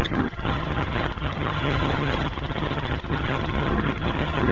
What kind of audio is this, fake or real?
fake